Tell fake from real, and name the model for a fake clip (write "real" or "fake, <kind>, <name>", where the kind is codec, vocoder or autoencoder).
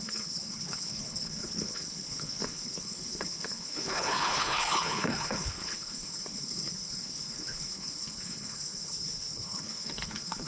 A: fake, codec, HILCodec